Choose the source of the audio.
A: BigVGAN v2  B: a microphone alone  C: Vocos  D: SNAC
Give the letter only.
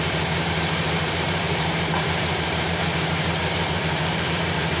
A